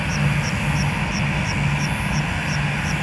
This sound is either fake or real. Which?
real